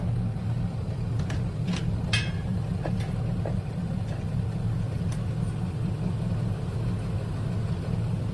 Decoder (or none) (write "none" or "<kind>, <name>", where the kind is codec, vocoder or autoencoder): none